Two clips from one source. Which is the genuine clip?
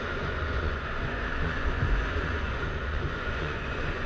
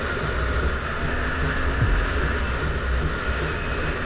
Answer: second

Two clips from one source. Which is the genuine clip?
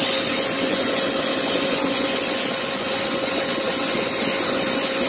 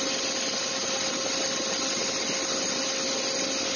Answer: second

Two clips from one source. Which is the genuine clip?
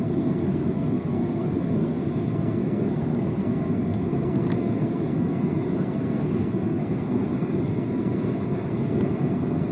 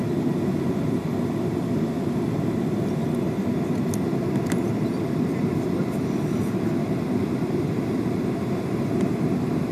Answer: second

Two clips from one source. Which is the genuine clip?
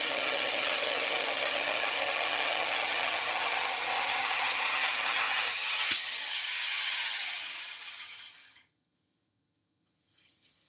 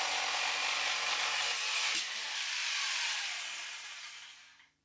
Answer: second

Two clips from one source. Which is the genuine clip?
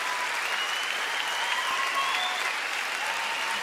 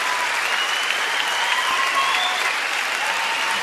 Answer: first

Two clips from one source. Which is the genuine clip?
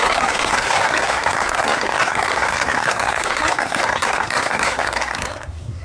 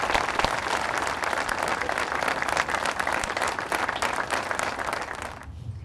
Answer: second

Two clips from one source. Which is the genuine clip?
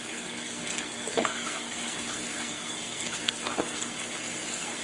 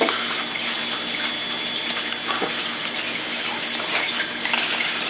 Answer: second